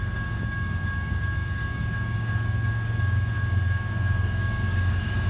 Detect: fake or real fake